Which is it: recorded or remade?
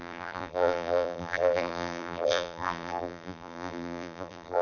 remade